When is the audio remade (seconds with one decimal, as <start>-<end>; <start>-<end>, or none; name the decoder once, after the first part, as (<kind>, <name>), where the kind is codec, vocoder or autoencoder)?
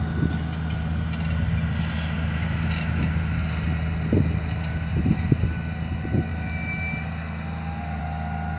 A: none